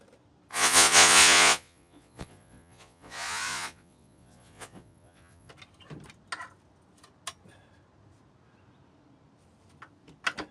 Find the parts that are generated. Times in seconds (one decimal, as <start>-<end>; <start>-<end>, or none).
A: 0.5-5.5